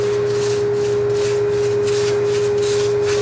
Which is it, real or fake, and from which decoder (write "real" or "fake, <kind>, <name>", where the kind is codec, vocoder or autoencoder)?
real